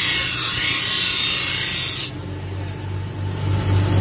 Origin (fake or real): real